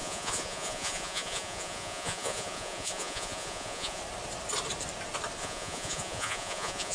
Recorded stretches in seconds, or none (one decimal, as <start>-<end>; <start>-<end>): 4.0-5.4